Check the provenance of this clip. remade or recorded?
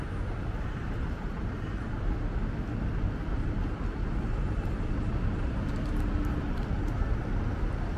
recorded